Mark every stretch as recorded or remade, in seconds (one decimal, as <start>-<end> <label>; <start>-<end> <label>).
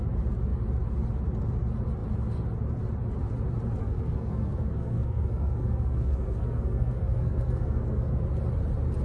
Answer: 0.0-3.8 recorded; 3.8-8.2 remade; 8.2-9.0 recorded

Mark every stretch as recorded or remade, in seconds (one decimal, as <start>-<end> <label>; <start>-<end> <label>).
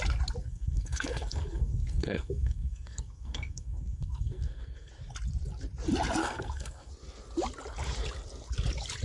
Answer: 0.0-0.4 recorded; 0.4-4.9 remade; 4.9-6.2 recorded; 6.2-6.9 remade; 6.9-9.0 recorded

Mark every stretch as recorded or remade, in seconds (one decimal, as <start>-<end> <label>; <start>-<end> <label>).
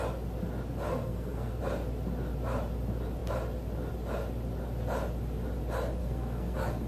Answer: 0.0-0.9 recorded; 0.9-1.6 remade; 1.6-6.0 recorded; 6.0-6.9 remade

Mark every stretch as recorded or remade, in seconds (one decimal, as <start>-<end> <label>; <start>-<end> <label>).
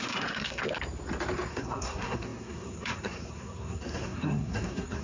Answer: 0.0-0.6 remade; 0.6-1.5 recorded; 1.5-5.0 remade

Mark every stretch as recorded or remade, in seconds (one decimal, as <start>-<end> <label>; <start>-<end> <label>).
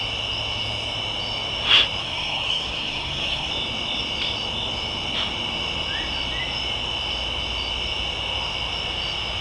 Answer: 0.0-2.0 recorded; 2.0-3.5 remade; 3.5-9.4 recorded